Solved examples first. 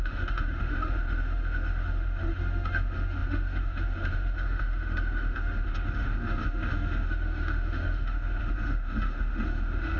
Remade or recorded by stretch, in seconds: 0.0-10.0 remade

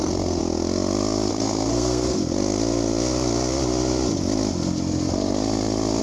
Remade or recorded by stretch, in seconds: 0.0-0.4 remade; 0.4-1.3 recorded; 1.3-2.2 remade; 2.2-6.0 recorded

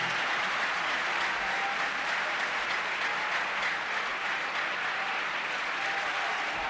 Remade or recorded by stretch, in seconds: 0.0-6.7 recorded